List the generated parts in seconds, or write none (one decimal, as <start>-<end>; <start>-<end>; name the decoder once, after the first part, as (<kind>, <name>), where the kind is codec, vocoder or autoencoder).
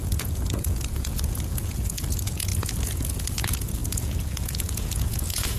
0.0-5.6 (vocoder, Vocos)